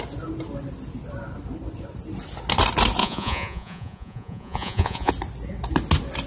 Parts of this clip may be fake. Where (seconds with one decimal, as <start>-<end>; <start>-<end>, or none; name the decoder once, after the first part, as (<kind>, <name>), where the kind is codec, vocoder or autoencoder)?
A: 3.0-5.1 (vocoder, Vocos)

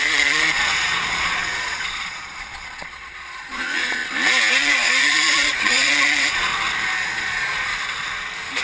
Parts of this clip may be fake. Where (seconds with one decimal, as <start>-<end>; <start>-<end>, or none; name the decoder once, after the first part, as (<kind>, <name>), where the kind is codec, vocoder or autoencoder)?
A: 0.0-4.0 (vocoder, Vocos); 4.5-6.5; 7.0-7.7

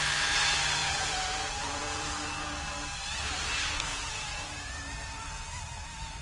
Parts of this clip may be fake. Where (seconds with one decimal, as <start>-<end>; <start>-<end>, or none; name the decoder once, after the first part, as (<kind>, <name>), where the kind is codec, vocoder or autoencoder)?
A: 0.8-2.0 (vocoder, Vocos); 3.9-4.7

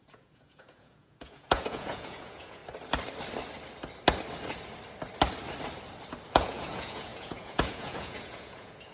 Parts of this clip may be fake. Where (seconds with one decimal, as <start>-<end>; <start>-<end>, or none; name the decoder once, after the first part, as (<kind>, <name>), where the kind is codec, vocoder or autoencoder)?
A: 0.0-2.6 (vocoder, Vocos); 6.3-8.9

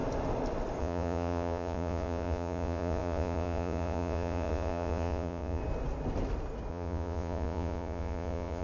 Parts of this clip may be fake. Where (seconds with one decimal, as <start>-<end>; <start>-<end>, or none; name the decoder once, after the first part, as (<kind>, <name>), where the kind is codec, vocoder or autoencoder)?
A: 0.8-5.6 (vocoder, Vocos); 6.7-8.6